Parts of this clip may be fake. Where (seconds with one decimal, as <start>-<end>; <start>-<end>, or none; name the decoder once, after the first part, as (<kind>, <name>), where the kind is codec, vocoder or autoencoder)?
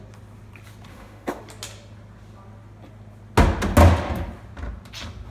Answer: 0.9-1.4 (autoencoder, DAC-VAE)